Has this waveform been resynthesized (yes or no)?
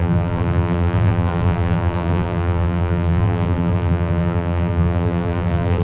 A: yes